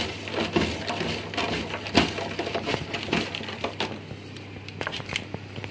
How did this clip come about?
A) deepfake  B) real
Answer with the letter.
A